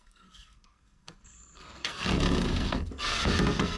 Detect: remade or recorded remade